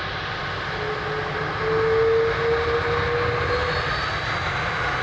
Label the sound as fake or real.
real